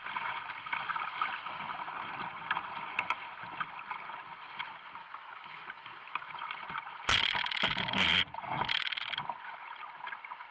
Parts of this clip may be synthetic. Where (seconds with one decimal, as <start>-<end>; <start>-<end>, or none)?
5.0-6.3